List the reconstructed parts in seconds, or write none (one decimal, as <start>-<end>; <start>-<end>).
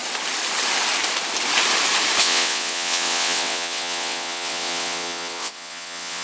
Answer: 2.2-6.2